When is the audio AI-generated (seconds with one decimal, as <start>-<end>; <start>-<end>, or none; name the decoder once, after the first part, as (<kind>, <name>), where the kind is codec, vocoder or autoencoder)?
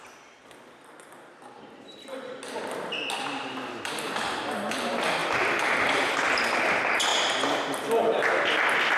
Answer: 5.2-6.4 (vocoder, BigVGAN v2)